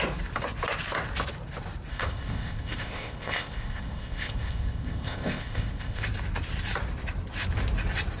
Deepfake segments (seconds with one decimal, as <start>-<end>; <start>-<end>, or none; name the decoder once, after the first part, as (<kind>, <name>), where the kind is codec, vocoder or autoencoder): 1.9-6.0 (codec, ZipCodec)